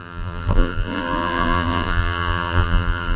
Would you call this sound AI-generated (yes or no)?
yes